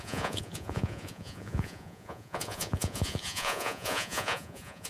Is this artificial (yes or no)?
yes